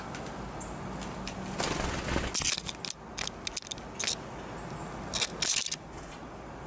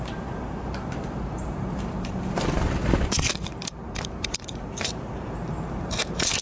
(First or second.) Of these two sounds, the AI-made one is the second